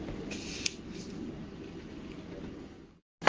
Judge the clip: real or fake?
real